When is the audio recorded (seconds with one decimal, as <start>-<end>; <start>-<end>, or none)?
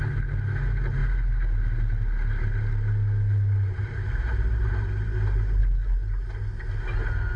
0.0-7.4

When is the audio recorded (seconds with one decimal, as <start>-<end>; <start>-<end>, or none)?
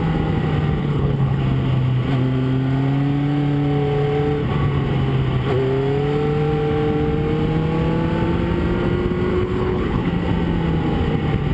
0.0-0.8; 1.4-9.3; 10.1-11.5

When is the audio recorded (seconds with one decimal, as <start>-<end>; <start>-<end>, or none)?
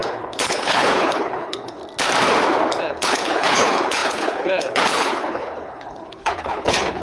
1.8-2.8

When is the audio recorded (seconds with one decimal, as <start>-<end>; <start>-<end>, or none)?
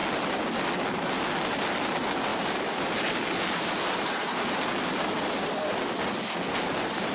0.0-7.1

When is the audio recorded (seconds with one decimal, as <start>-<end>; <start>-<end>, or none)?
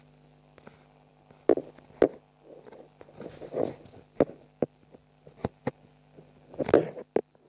0.0-7.5